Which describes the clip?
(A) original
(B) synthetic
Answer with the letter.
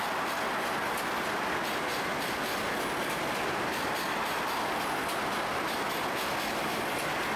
A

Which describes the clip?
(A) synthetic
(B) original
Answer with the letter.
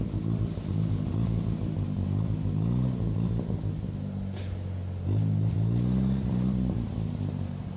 B